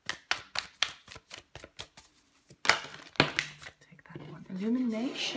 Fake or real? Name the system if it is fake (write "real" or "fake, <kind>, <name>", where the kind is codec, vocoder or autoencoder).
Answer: real